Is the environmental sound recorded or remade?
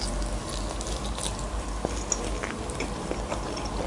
recorded